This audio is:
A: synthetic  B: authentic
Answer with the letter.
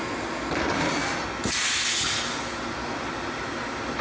B